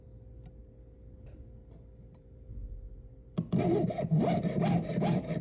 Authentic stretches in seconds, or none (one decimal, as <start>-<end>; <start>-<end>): 0.0-5.4